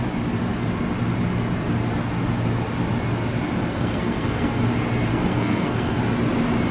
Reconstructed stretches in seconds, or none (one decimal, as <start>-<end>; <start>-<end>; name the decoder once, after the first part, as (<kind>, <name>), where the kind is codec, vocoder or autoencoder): 3.7-4.6 (codec, SNAC); 5.1-6.0